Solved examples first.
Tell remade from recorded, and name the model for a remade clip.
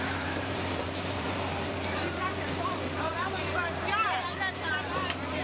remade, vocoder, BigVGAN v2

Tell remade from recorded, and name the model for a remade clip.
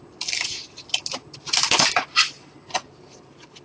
recorded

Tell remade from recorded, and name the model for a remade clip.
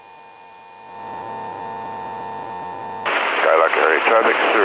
recorded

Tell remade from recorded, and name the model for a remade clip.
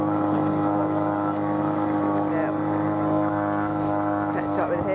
recorded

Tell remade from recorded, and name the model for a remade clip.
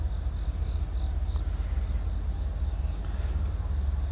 recorded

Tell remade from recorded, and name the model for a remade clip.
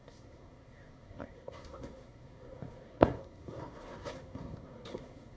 remade, codec, SNAC